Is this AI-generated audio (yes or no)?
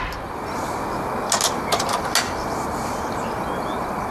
no